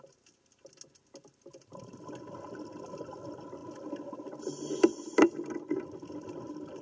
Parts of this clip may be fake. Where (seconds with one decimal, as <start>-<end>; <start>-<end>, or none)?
none